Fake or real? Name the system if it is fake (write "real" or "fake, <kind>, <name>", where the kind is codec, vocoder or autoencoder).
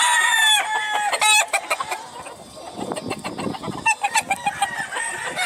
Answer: real